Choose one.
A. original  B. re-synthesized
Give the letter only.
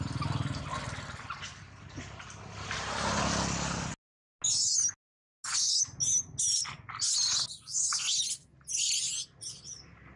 A